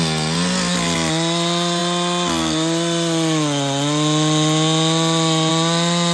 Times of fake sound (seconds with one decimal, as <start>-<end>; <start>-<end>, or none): none